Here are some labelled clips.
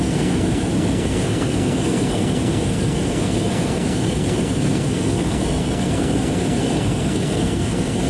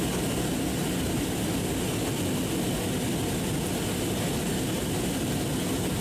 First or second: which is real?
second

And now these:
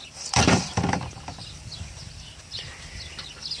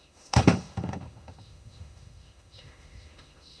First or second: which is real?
first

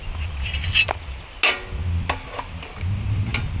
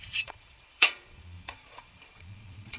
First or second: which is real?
first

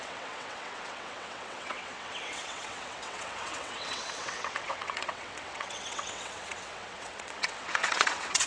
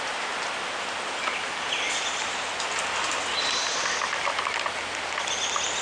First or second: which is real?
second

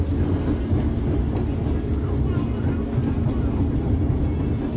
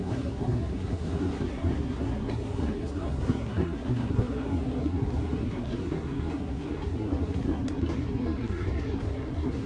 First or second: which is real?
first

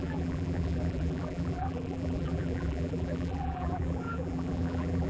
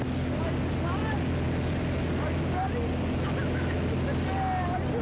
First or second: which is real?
second